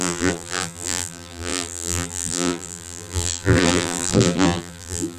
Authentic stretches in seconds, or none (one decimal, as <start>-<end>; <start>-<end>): none

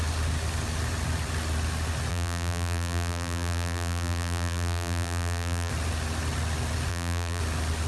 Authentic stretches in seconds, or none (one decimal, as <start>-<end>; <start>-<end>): 0.0-2.1; 5.7-6.9; 7.4-7.9

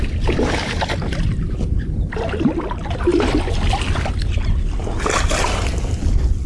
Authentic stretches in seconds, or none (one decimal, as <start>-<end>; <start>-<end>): 0.0-6.5

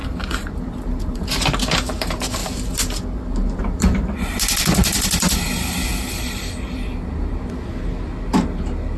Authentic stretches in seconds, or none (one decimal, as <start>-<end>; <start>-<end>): 1.3-2.4; 7.1-9.0

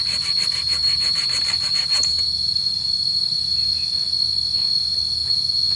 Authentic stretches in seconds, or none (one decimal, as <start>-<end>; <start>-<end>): 0.0-0.8; 3.7-5.8

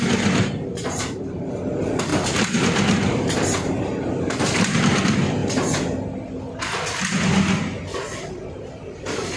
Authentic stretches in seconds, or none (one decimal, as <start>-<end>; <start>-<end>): 0.0-0.4; 1.6-2.1; 5.0-9.4